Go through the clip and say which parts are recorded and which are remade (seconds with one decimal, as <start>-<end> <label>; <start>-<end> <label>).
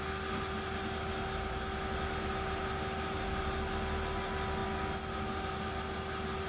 0.0-6.5 recorded